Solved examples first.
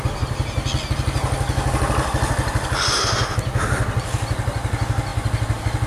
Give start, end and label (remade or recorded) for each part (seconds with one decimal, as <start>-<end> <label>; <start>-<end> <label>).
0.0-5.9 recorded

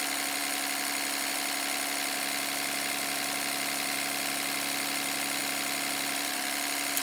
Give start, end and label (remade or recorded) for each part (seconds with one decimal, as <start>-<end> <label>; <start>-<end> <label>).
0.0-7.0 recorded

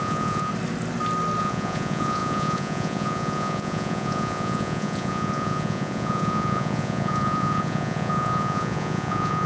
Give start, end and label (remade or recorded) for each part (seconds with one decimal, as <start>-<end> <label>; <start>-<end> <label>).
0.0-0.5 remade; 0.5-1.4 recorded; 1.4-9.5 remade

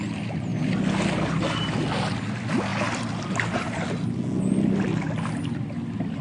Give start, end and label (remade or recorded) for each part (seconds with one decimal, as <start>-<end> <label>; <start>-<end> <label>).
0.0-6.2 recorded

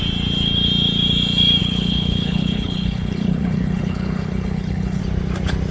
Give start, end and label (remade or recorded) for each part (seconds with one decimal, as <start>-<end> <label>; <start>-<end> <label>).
0.0-1.6 recorded; 1.6-5.0 remade; 5.0-5.7 recorded

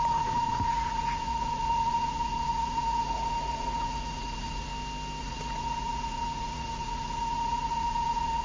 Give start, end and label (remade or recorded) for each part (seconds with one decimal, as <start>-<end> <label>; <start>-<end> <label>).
0.0-4.7 remade; 4.7-5.2 recorded; 5.2-8.4 remade

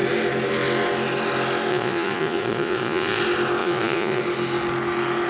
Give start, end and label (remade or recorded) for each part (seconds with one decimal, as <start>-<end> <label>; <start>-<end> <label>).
0.0-1.7 recorded; 1.7-3.2 remade; 3.2-3.6 recorded; 3.6-4.2 remade; 4.2-5.3 recorded

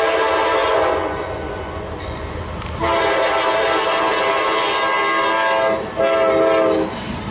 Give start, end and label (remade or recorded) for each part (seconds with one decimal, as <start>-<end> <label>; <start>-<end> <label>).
0.0-0.6 recorded; 0.6-2.4 remade; 2.4-7.3 recorded